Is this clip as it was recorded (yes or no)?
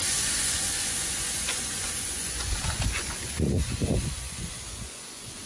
no